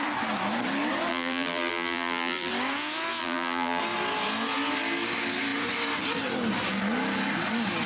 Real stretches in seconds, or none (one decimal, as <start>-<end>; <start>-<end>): 0.0-1.1; 2.5-3.2; 3.8-7.9